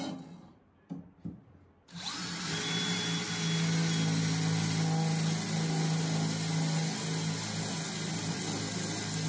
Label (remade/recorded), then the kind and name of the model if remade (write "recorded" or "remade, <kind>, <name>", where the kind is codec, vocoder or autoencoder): recorded